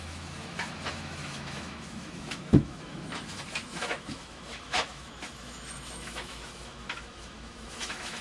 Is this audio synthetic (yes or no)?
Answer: yes